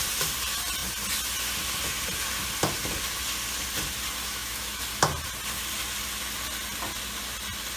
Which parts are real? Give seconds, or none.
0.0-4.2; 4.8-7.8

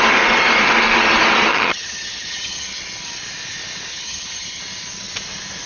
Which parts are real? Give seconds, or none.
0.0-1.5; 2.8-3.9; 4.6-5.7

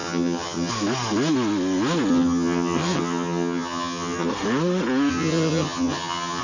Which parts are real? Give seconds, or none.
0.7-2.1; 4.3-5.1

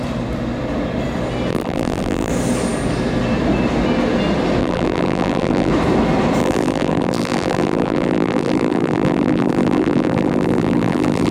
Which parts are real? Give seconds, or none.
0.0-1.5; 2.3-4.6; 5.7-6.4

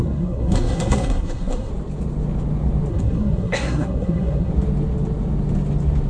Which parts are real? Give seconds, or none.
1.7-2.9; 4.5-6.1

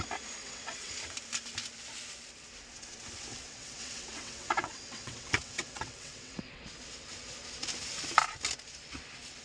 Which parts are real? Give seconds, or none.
0.0-0.4; 0.9-3.3; 6.6-9.4